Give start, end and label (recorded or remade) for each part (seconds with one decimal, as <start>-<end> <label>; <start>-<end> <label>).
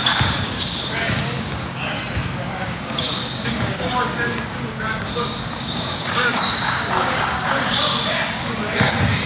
0.0-9.3 remade